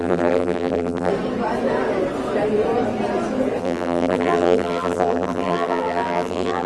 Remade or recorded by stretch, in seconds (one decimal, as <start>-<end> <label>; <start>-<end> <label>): 0.0-1.1 remade; 1.1-3.6 recorded; 3.6-6.7 remade